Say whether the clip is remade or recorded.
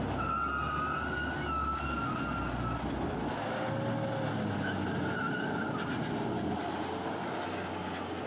recorded